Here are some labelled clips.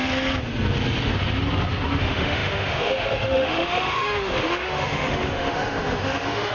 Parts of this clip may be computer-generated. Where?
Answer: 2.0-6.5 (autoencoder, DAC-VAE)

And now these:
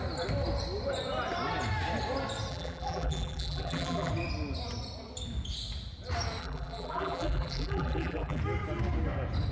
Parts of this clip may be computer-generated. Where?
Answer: 2.5-4.1 (vocoder, BigVGAN v2); 6.4-8.4

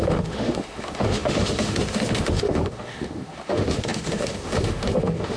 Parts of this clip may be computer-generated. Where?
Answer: 0.0-5.4 (autoencoder, DAC-VAE)

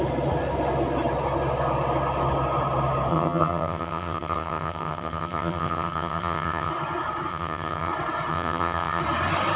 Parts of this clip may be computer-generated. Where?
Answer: 3.1-6.7 (vocoder, HiFi-GAN); 7.3-7.9; 8.3-9.0